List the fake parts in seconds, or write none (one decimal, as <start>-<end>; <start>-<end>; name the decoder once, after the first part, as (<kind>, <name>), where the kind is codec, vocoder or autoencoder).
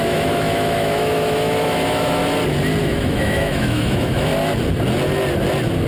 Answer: 0.0-2.2 (autoencoder, DAC-VAE); 2.8-4.3